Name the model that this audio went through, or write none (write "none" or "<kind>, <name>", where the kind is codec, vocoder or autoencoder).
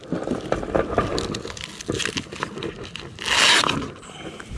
none